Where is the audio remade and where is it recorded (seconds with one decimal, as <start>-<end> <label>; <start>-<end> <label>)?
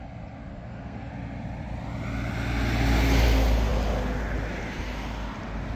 0.0-0.5 recorded; 0.5-1.1 remade; 1.1-5.8 recorded